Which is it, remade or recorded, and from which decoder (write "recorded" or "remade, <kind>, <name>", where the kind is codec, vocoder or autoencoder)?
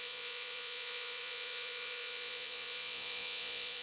remade, vocoder, Vocos